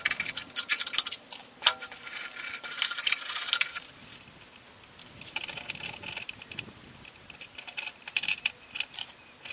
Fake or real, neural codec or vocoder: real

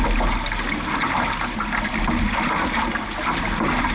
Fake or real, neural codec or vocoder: real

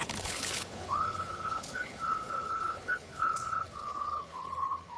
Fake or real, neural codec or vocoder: fake, codec, HILCodec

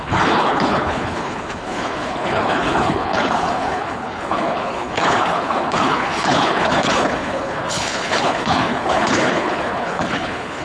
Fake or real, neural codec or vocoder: fake, codec, HILCodec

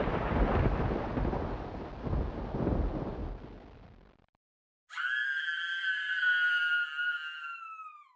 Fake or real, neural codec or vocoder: real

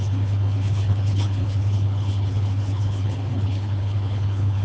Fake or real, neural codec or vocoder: fake, codec, HILCodec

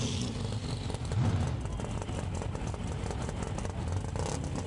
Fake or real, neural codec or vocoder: real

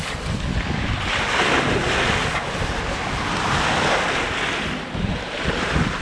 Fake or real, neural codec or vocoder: real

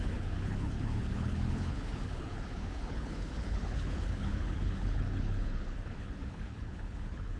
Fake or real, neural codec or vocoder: fake, codec, HILCodec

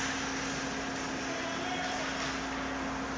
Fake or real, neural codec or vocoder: real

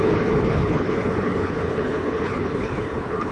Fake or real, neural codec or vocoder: fake, codec, HILCodec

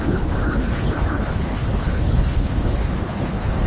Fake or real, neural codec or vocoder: fake, codec, HILCodec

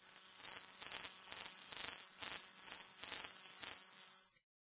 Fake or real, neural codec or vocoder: real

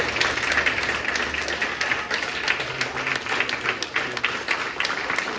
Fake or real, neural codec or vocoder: real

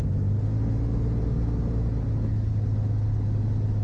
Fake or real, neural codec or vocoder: real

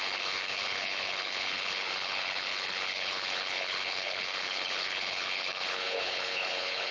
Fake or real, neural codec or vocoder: fake, codec, HILCodec